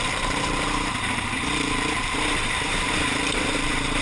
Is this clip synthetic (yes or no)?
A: yes